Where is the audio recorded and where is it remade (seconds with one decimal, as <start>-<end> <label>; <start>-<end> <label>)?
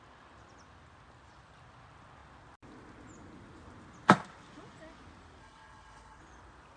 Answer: 0.0-5.4 recorded; 5.4-6.2 remade; 6.2-6.8 recorded